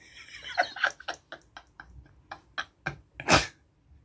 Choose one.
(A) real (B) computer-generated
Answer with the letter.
A